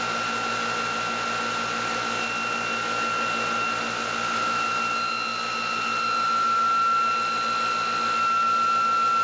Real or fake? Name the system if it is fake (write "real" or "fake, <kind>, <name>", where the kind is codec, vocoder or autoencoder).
real